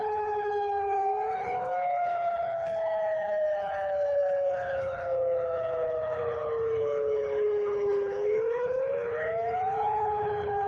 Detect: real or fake fake